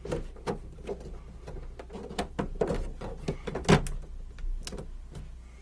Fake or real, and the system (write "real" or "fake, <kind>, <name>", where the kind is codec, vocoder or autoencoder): real